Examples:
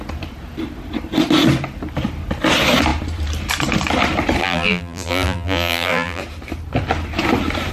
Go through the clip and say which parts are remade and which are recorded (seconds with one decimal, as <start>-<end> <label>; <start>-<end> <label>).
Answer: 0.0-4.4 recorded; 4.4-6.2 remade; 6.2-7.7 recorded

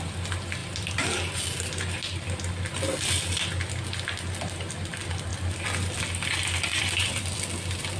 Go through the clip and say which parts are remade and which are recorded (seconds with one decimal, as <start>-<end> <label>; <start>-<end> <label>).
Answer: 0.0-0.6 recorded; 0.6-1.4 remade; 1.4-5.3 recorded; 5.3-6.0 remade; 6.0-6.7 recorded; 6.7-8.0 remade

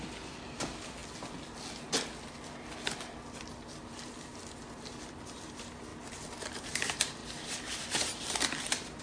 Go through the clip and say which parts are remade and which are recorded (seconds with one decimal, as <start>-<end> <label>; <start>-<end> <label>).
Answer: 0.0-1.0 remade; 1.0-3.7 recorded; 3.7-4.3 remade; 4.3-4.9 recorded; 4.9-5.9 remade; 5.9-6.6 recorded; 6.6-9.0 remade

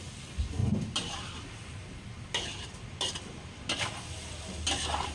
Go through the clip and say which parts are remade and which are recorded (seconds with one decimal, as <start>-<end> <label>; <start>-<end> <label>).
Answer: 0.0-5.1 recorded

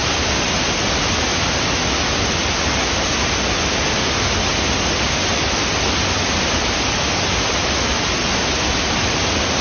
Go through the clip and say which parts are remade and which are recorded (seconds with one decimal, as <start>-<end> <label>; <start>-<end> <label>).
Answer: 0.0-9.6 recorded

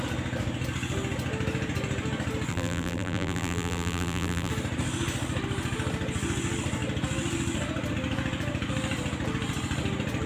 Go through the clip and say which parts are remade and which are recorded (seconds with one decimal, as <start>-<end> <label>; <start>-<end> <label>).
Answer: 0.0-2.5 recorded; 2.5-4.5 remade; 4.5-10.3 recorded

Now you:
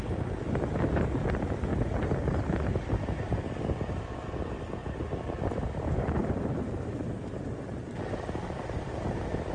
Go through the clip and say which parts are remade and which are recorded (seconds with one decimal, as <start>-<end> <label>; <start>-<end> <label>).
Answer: 0.0-9.5 remade